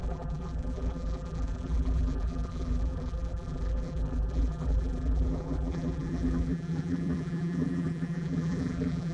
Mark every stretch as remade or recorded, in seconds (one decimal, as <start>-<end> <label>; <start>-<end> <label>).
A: 0.0-9.1 remade